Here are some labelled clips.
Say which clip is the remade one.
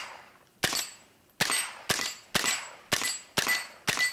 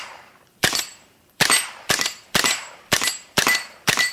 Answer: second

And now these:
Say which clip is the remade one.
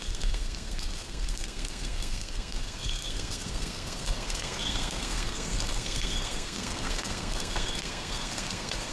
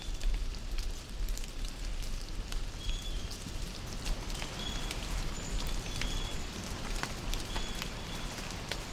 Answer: first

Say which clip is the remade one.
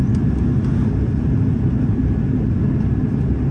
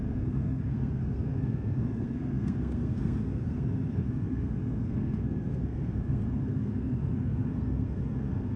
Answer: second